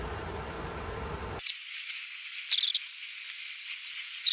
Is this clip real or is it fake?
real